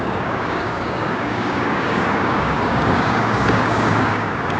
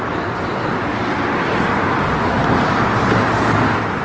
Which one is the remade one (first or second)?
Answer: first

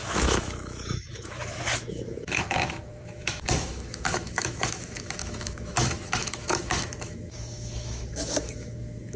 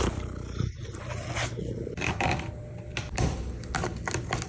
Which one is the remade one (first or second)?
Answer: first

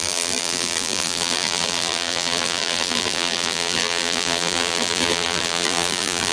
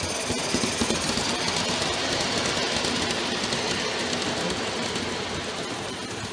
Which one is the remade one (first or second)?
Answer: first